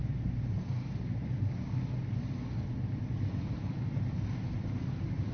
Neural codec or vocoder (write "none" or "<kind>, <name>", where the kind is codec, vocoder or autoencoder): none